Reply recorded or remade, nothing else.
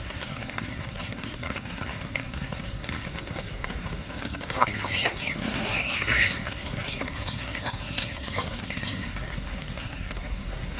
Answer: remade